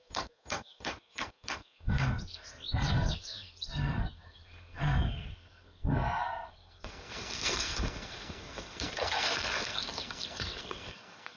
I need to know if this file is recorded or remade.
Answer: remade